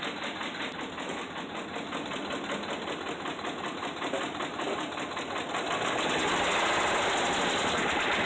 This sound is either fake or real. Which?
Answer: real